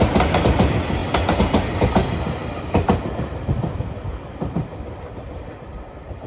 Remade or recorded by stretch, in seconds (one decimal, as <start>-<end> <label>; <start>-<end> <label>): 0.0-6.3 recorded